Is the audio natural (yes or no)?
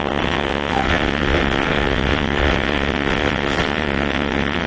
no